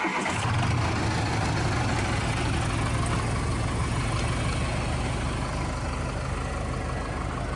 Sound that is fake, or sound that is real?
real